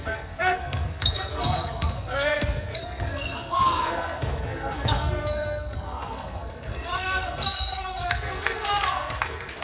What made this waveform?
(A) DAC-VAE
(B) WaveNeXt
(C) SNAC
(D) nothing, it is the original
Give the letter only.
C